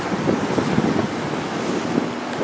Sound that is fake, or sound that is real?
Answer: real